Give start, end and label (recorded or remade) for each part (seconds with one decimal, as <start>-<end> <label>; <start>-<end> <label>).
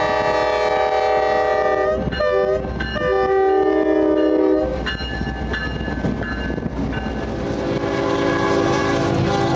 0.0-9.6 recorded